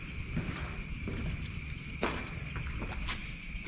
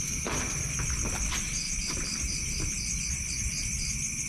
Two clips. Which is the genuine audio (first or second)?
second